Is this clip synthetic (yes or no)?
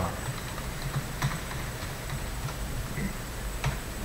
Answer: yes